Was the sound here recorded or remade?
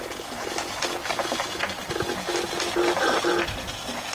recorded